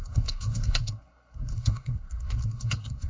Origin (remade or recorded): remade